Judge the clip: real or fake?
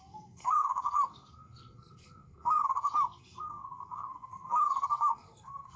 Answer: fake